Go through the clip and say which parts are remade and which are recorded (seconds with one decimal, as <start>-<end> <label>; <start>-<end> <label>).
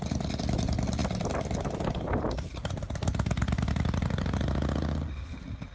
0.0-5.7 recorded